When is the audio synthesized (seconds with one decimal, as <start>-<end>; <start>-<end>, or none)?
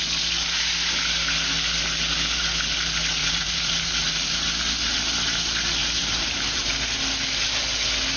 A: 3.2-4.5; 5.8-6.7